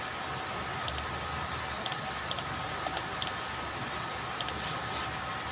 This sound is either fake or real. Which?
real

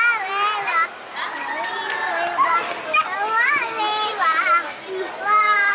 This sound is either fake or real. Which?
real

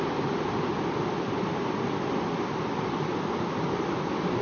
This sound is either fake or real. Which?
real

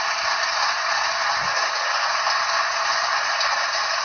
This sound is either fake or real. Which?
real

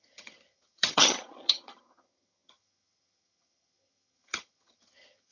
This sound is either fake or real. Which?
fake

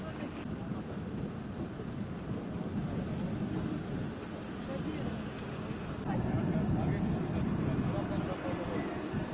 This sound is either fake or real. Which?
real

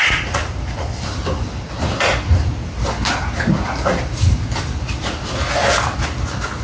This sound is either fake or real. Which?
real